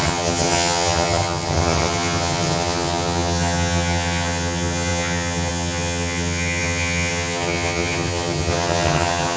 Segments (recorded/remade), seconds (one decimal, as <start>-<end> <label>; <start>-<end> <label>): 0.0-9.4 remade